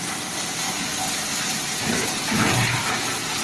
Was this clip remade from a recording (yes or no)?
no